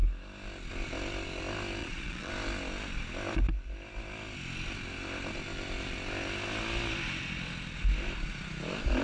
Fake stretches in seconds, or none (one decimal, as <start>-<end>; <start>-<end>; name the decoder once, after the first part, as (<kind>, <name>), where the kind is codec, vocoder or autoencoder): 1.8-2.3 (vocoder, Vocos)